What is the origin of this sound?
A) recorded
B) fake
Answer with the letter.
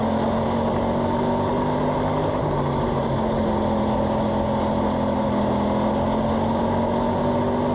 A